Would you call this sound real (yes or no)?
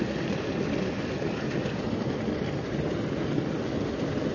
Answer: yes